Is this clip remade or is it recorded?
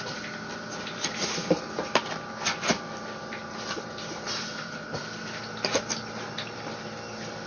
recorded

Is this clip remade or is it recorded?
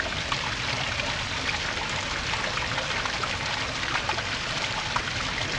remade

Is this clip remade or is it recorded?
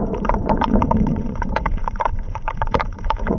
remade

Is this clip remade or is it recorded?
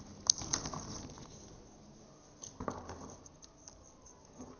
recorded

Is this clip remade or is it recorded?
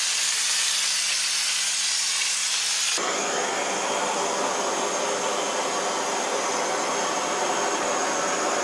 recorded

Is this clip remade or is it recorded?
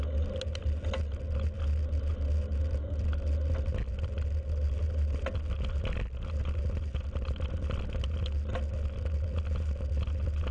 recorded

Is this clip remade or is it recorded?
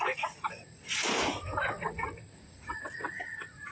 remade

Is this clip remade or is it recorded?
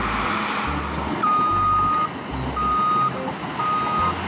recorded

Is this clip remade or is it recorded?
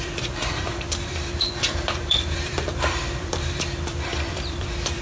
remade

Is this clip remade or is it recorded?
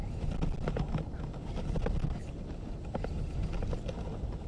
recorded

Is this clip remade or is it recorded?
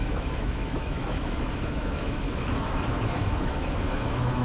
remade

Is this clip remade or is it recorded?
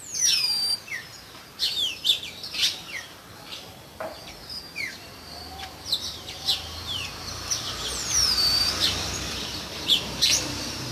remade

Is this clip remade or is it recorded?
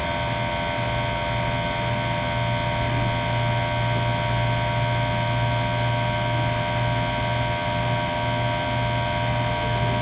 recorded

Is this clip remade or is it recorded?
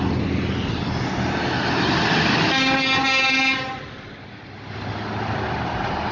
recorded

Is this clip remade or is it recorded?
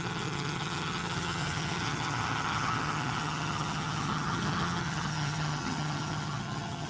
remade